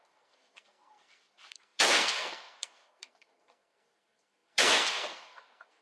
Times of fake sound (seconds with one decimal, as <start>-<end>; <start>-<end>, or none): 0.0-5.8